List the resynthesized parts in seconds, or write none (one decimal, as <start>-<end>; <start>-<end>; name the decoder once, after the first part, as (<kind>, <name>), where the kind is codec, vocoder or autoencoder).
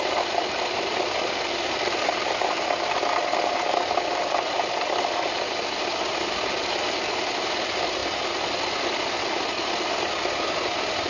none